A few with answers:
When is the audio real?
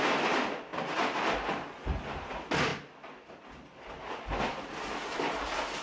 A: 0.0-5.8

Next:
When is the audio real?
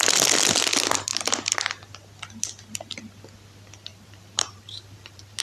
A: 0.0-3.9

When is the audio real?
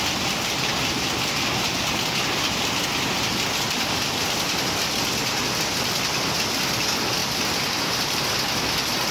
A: 0.0-7.2; 8.3-9.1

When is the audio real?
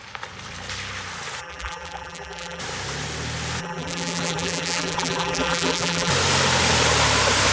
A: 0.0-1.4; 2.6-3.6; 6.1-7.5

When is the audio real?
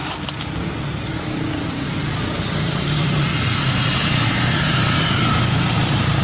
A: 0.0-0.9